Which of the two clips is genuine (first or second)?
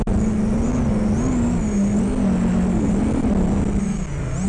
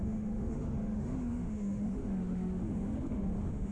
first